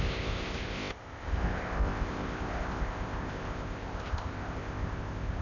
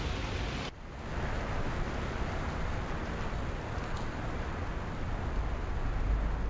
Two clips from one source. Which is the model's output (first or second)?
first